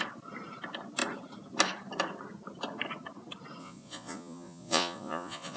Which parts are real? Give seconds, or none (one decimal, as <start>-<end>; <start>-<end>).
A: 0.0-3.6